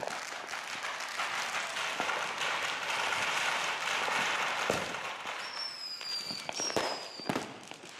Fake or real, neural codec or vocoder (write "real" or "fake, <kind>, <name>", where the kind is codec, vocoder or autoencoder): real